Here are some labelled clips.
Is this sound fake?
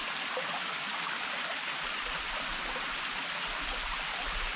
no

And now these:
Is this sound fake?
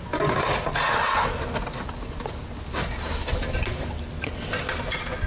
no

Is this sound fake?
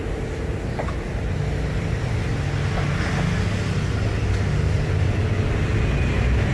no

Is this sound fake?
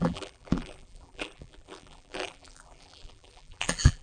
yes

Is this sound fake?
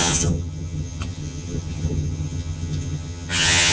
yes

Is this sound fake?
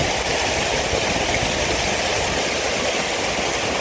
no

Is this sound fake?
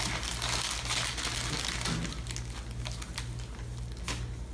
no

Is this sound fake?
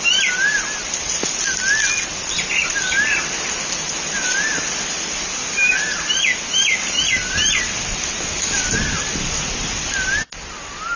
no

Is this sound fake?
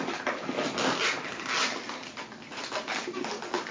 no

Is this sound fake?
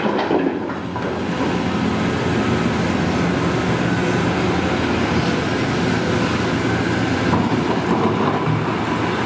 no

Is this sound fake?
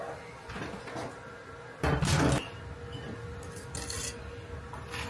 no